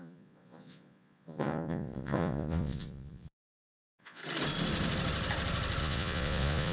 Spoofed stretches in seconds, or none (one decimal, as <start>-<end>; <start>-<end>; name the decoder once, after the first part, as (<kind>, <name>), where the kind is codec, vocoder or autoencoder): 0.0-4.2 (vocoder, Vocos); 5.8-6.7